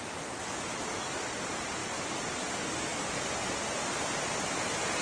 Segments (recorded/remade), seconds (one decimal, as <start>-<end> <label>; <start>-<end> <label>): 0.0-5.0 recorded